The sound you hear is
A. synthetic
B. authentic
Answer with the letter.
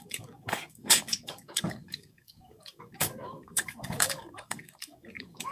A